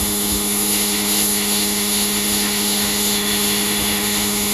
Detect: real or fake fake